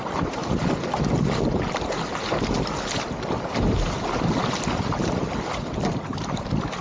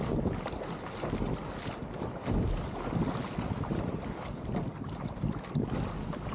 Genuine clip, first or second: second